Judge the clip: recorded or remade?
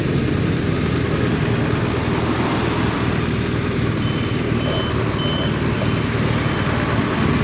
recorded